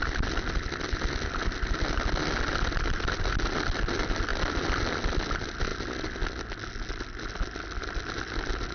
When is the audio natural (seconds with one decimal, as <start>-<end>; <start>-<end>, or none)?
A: 0.0-8.7